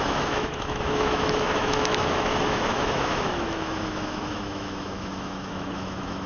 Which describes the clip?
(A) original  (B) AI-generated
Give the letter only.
B